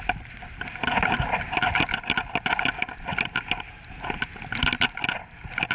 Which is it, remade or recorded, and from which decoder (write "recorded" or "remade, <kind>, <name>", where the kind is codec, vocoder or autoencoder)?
recorded